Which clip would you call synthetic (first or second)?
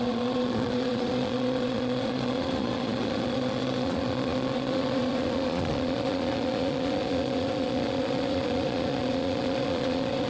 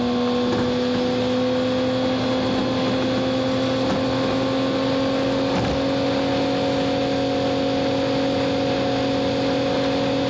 first